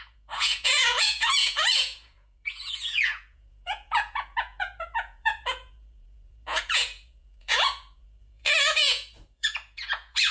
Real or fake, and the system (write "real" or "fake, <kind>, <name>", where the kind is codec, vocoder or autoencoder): fake, vocoder, Vocos